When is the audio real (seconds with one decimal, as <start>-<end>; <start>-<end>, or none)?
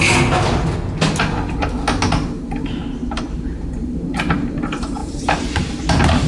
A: 0.0-3.0; 4.2-5.0